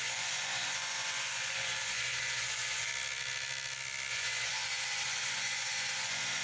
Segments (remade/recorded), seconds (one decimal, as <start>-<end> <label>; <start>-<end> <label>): 0.0-2.9 remade; 2.9-4.1 recorded; 4.1-6.4 remade